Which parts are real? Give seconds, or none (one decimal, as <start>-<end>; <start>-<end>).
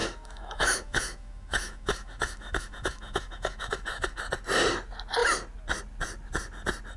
4.2-7.0